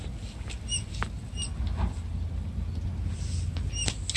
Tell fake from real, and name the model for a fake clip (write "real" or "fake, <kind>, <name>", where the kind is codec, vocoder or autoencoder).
real